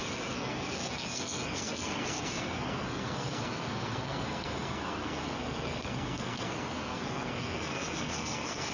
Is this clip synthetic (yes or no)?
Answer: yes